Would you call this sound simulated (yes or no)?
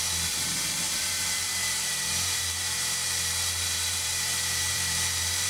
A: yes